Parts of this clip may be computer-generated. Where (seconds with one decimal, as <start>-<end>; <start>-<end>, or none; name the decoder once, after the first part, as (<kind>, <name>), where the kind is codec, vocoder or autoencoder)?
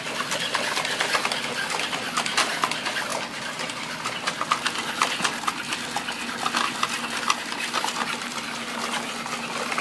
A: 3.1-3.7 (vocoder, BigVGAN v2)